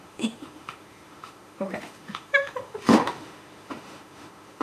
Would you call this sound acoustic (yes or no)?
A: no